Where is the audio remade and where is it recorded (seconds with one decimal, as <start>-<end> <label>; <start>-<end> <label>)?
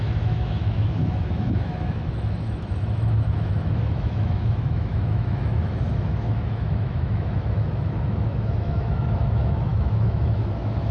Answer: 0.0-10.9 remade